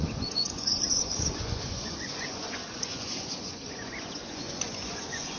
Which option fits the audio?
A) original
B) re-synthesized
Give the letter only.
B